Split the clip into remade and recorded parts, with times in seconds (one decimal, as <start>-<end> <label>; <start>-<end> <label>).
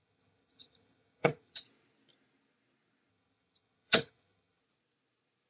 0.0-1.6 remade; 1.6-3.1 recorded; 3.1-4.6 remade; 4.6-5.5 recorded